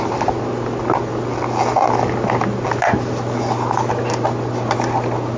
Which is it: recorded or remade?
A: recorded